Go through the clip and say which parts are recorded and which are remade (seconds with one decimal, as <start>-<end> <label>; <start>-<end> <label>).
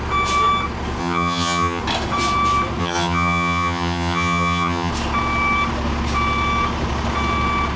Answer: 0.0-1.0 recorded; 1.0-1.8 remade; 1.8-2.8 recorded; 2.8-4.9 remade; 4.9-7.8 recorded